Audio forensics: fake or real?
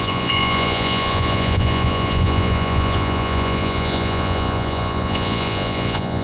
fake